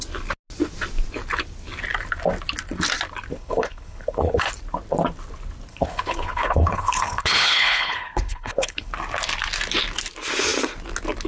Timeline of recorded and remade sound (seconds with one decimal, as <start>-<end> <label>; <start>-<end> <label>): 0.0-3.3 recorded; 3.3-4.5 remade; 4.5-5.7 recorded; 5.7-8.9 remade; 8.9-11.3 recorded